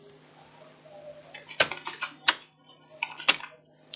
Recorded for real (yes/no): yes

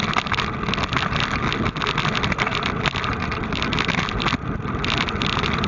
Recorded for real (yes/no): yes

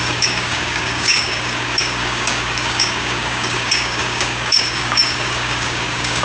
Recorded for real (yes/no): no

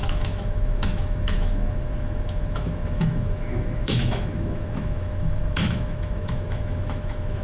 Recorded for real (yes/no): no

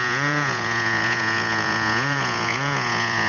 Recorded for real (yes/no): no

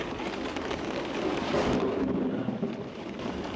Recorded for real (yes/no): no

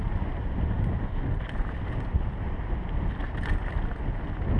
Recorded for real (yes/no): yes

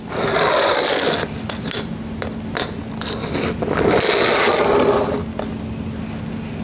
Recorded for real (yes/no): yes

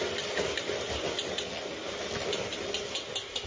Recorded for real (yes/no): yes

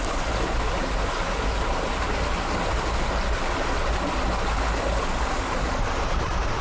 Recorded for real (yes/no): yes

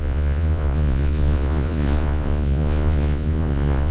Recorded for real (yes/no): no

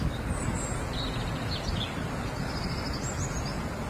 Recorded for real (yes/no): yes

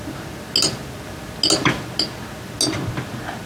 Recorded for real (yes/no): yes